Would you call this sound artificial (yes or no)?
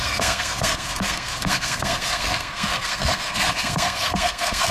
yes